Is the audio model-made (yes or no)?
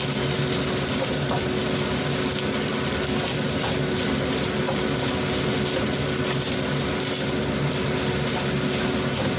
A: no